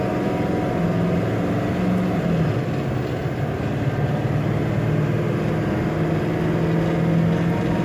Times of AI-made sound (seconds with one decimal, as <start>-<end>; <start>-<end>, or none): 3.2-4.1